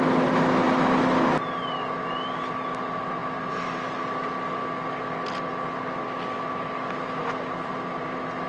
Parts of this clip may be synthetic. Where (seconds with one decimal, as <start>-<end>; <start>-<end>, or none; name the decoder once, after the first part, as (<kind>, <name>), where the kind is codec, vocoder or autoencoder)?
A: none